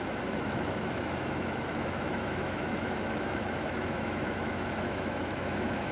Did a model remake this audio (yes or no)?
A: yes